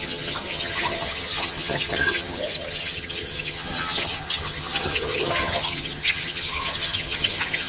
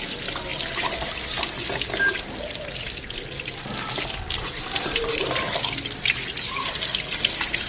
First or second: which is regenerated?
first